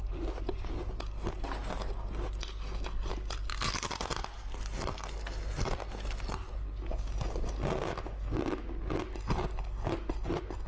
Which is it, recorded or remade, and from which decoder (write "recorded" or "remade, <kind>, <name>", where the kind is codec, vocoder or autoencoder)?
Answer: recorded